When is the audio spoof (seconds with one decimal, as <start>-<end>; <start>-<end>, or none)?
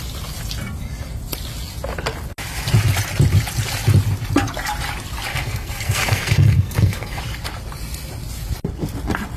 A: 5.3-7.2